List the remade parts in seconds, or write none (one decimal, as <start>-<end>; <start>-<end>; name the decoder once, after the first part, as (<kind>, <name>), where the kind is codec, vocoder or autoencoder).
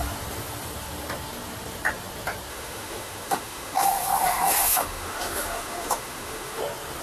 2.5-6.6 (autoencoder, DAC-VAE)